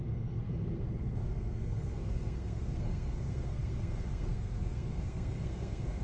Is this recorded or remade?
remade